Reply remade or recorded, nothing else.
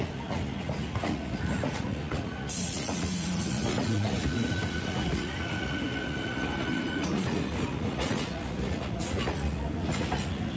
remade